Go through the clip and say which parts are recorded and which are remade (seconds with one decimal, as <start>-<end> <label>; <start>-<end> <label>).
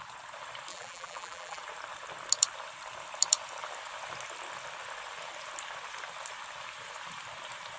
0.0-0.7 recorded; 0.7-1.6 remade; 1.6-7.8 recorded